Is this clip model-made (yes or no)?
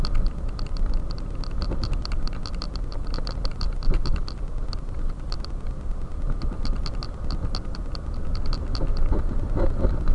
no